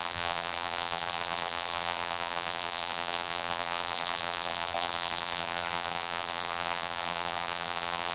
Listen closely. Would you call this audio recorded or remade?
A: remade